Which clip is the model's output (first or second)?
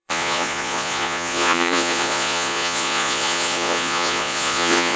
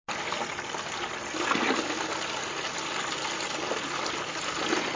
first